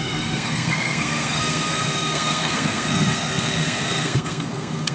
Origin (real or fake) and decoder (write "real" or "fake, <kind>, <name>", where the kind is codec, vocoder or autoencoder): fake, codec, SNAC